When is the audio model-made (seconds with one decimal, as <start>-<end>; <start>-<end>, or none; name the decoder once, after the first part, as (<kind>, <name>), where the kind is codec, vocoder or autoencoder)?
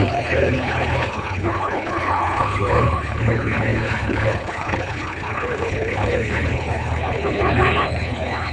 0.0-8.5 (codec, HILCodec)